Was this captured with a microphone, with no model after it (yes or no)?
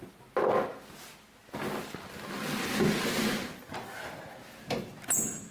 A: yes